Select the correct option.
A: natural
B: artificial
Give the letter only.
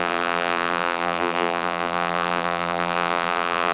B